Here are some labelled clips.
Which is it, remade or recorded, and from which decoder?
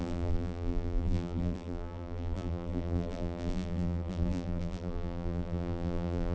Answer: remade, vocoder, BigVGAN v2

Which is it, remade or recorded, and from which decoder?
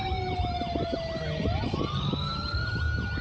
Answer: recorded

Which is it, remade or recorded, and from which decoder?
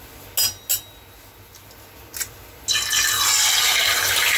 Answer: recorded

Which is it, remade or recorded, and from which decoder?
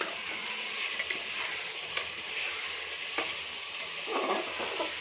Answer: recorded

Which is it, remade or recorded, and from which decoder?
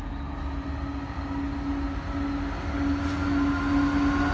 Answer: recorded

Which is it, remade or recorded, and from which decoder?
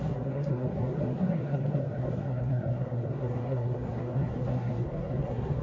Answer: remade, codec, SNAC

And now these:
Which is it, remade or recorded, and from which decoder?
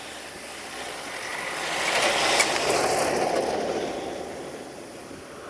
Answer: recorded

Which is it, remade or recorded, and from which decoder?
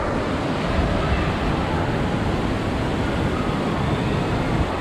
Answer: recorded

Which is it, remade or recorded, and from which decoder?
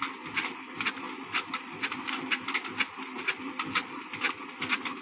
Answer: recorded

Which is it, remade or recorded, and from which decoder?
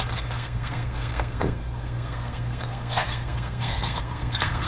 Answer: remade, codec, SNAC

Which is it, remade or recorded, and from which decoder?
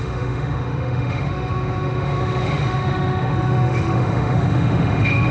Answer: remade, autoencoder, DAC-VAE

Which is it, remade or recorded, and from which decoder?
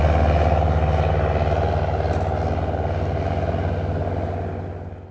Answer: recorded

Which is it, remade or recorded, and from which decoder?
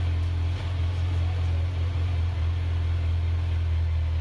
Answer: recorded